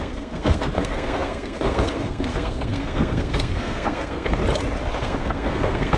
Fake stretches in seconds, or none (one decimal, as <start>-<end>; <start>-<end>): 0.0-4.4; 5.0-6.0